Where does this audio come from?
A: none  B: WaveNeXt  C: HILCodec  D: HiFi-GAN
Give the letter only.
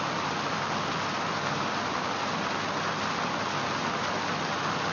A